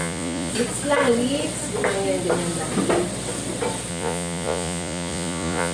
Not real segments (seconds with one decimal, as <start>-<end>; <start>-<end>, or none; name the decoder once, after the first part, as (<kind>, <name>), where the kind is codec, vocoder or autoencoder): 0.0-0.5 (vocoder, Vocos); 3.9-5.7